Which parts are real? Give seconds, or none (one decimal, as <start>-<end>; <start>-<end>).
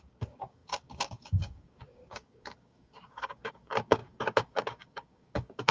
none